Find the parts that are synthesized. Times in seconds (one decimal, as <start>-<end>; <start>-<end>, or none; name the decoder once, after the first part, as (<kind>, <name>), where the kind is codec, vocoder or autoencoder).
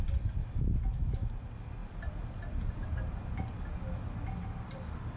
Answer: 0.4-1.3 (autoencoder, DAC-VAE)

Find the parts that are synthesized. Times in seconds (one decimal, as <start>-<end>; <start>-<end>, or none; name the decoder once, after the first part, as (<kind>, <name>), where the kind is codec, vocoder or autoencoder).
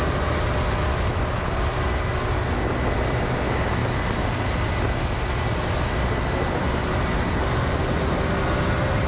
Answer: none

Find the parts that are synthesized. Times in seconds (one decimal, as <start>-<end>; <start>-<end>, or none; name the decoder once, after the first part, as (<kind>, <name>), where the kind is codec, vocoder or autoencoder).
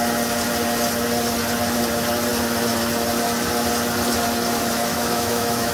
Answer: 4.9-5.7 (autoencoder, DAC-VAE)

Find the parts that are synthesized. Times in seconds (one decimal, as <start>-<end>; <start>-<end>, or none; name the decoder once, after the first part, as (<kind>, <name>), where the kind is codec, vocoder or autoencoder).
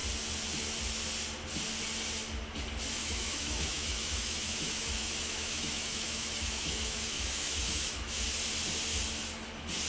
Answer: 3.0-8.2 (autoencoder, DAC-VAE)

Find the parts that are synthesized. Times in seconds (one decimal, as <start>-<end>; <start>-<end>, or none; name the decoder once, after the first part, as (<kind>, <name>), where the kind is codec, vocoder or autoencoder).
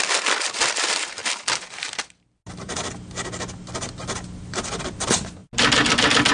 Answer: none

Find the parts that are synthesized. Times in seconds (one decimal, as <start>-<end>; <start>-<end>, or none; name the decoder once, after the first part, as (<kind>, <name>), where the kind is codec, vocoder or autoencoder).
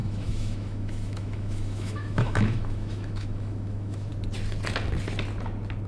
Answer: 0.0-4.1 (autoencoder, DAC-VAE)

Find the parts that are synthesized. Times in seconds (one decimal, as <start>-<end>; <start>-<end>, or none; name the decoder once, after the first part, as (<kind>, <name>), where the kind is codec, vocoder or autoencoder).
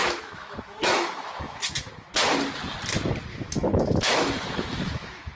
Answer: 0.0-2.1 (autoencoder, DAC-VAE); 3.3-5.4